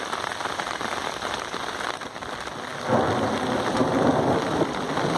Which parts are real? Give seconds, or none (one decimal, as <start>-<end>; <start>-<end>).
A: 0.0-5.2